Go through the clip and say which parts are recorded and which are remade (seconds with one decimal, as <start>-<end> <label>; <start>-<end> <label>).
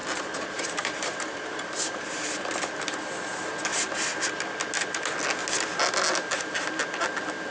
0.0-2.5 remade; 2.5-7.5 recorded